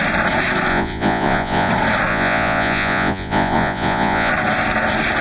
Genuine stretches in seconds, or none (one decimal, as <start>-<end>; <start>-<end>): 0.0-0.7; 1.7-2.1; 4.3-5.2